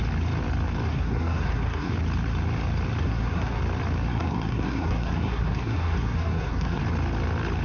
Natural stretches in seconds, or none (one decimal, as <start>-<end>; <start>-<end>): 0.0-0.9; 1.9-3.0; 3.6-4.1; 6.8-7.6